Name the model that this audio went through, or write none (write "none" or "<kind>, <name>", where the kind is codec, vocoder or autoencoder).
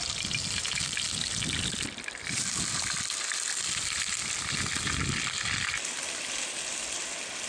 none